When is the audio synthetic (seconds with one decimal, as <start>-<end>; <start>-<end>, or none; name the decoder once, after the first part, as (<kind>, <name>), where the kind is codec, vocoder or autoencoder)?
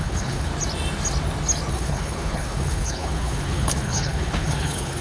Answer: 0.0-0.5 (codec, HILCodec); 1.7-5.0